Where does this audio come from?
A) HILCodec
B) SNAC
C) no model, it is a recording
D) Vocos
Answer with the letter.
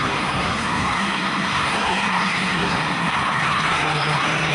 B